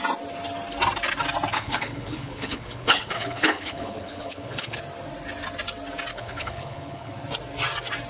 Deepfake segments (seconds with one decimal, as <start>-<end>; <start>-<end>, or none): 1.5-4.8; 6.1-7.1